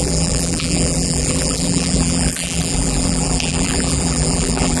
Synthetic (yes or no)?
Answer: yes